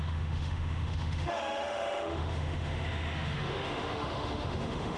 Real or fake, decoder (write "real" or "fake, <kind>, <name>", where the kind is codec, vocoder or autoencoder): fake, autoencoder, DAC-VAE